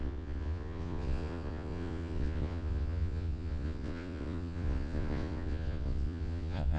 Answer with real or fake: fake